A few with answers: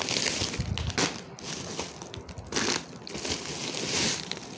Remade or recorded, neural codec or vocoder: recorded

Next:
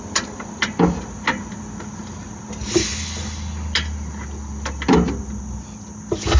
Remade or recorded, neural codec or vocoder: recorded